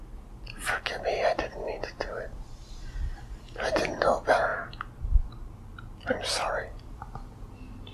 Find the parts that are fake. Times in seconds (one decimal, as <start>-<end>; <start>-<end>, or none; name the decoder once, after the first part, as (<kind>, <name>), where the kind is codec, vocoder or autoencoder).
none